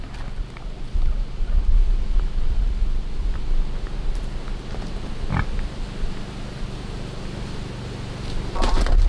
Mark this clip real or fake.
real